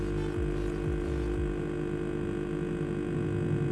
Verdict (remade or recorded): recorded